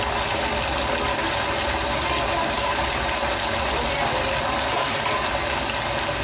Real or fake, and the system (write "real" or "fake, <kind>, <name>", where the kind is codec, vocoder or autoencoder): real